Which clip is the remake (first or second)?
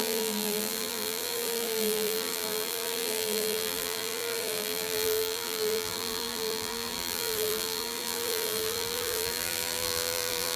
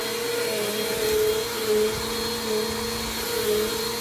first